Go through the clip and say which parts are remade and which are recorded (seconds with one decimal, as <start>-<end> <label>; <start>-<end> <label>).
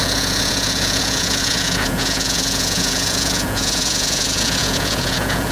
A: 0.0-5.5 remade